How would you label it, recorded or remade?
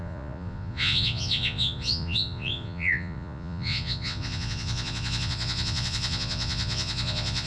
remade